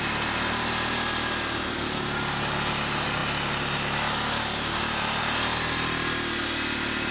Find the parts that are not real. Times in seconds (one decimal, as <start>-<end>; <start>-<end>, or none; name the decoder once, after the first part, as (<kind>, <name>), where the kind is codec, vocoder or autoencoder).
none